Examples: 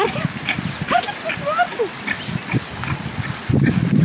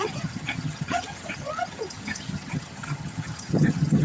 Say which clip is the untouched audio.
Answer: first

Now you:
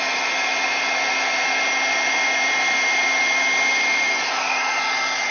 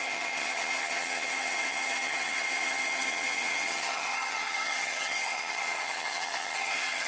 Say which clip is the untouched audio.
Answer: first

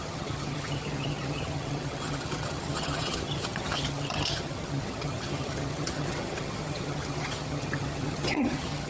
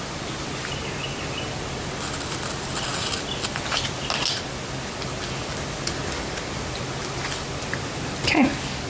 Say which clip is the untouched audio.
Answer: second